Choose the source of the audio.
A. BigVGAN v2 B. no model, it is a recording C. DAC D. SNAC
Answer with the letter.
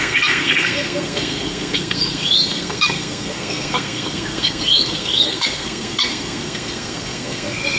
D